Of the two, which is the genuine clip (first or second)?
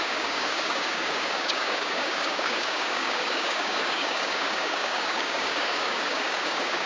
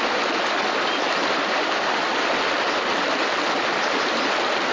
second